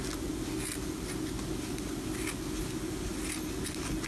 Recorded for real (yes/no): yes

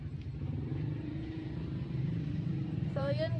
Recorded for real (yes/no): no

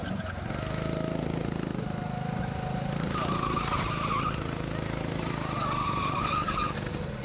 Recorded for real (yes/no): yes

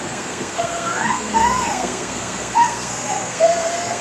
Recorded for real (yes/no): no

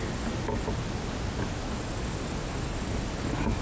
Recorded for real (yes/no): yes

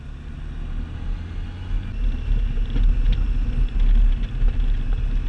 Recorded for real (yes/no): yes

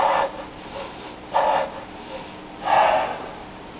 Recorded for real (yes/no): yes